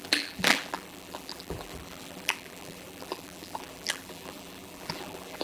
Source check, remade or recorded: remade